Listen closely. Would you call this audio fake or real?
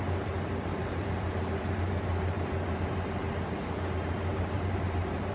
fake